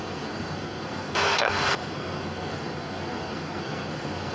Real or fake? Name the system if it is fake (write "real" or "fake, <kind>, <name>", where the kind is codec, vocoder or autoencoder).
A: fake, codec, SNAC